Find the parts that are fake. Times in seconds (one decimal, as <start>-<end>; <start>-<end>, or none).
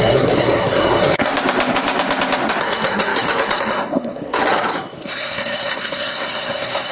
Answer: 0.0-1.3; 2.6-6.9